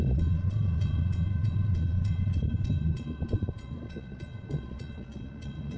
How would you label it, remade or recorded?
remade